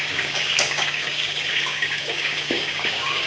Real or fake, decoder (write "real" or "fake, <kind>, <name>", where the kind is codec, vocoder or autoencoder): fake, codec, DAC